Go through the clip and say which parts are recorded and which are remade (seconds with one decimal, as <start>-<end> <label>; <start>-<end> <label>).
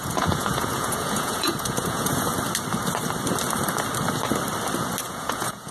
0.0-2.3 remade; 2.3-5.1 recorded; 5.1-5.7 remade